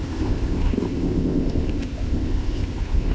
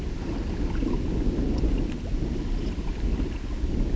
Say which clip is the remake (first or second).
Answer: first